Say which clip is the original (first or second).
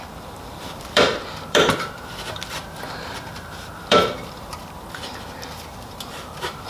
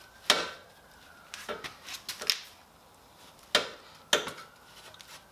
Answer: second